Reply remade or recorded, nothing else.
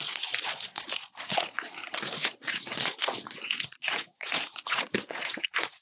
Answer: remade